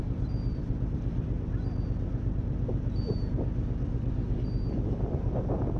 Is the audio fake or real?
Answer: fake